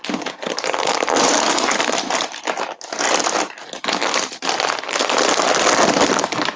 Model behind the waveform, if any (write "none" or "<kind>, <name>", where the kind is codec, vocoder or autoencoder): none